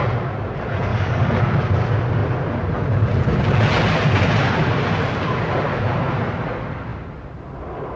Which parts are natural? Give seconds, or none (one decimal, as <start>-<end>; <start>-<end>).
0.0-0.9; 1.4-8.0